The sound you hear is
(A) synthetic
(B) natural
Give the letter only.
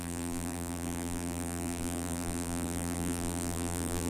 A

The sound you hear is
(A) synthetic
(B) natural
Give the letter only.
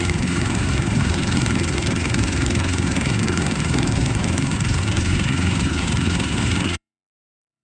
A